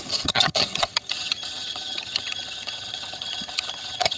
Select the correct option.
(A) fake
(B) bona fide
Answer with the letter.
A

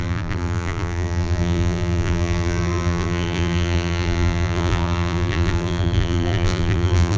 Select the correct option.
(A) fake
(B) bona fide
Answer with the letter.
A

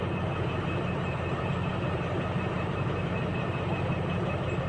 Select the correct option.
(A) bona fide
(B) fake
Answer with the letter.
B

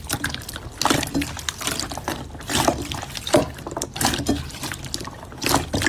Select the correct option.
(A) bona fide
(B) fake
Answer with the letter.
A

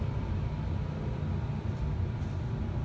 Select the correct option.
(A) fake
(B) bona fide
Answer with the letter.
A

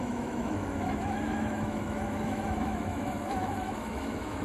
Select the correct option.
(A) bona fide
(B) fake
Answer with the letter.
B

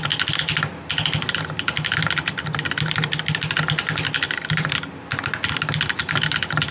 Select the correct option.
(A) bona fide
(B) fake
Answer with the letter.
A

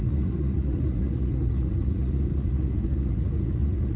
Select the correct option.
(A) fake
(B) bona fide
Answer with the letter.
A